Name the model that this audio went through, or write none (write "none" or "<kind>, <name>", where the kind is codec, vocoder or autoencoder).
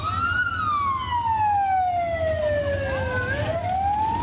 none